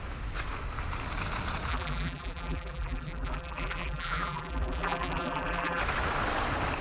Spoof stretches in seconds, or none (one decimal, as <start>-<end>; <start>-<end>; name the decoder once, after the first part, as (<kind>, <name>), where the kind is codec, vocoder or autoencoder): 1.7-5.8 (vocoder, BigVGAN v2)